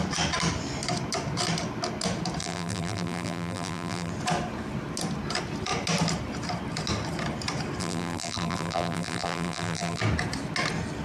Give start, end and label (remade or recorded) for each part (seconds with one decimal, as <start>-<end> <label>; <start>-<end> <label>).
0.0-2.4 recorded; 2.4-4.1 remade; 4.1-7.8 recorded; 7.8-10.0 remade; 10.0-11.0 recorded